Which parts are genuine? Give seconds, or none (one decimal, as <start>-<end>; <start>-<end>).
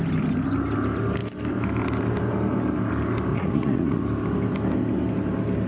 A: 0.0-3.3; 4.0-5.7